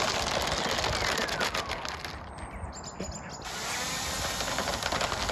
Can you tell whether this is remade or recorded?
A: recorded